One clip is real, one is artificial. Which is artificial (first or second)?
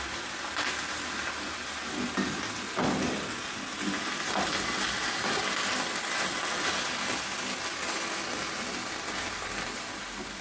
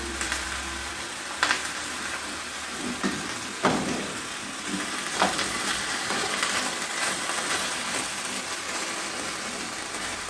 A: second